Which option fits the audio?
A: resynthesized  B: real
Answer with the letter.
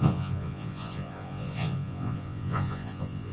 A